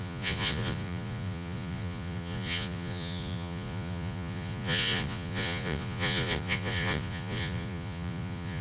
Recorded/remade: remade